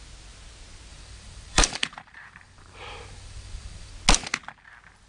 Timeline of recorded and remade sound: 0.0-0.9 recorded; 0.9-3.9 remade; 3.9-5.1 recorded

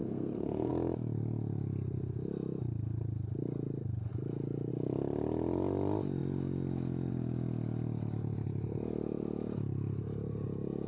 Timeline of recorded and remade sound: 0.0-0.7 remade; 0.7-10.9 recorded

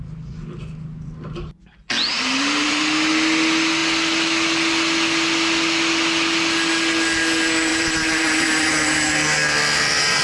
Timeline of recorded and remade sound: 0.0-2.1 recorded; 2.1-2.8 remade; 2.8-7.7 recorded; 7.7-9.1 remade; 9.1-10.2 recorded

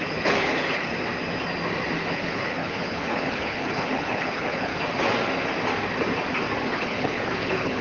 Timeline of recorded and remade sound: 0.0-0.9 remade; 0.9-2.0 recorded; 2.0-4.7 remade; 4.7-6.7 recorded; 6.7-7.8 remade

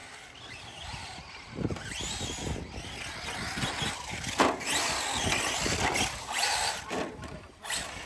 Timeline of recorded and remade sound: 0.0-8.1 recorded

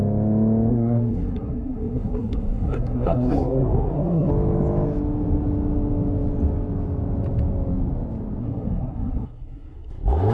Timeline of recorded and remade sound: 0.0-0.7 recorded; 0.7-4.3 remade; 4.3-8.4 recorded; 8.4-9.9 remade; 9.9-10.3 recorded

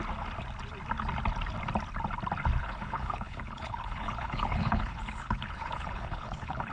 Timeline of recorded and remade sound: 0.0-2.6 recorded; 2.6-6.7 remade

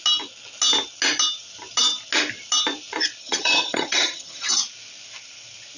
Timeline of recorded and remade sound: 0.0-3.2 recorded; 3.2-4.5 remade; 4.5-5.8 recorded